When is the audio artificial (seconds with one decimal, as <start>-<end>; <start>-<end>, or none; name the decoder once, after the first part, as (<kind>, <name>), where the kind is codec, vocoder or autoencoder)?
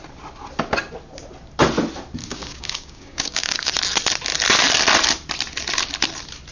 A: 2.2-3.7 (codec, DAC)